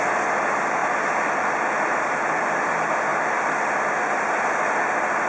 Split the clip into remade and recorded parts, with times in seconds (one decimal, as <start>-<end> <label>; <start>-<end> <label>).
0.0-5.3 recorded